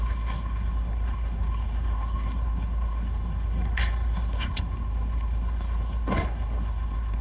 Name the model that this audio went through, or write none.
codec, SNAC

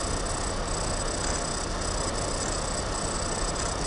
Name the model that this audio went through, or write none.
none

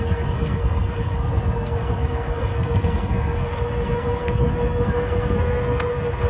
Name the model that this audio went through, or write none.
codec, SNAC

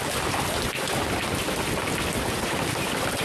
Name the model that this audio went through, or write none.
none